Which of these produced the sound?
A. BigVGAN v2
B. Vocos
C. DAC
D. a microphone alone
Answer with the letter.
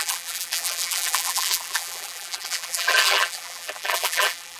A